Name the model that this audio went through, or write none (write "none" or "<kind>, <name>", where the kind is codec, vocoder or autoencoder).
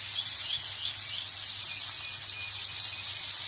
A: none